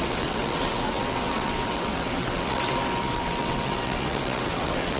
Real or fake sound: fake